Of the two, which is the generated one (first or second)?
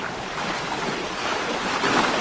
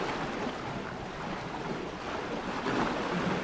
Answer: first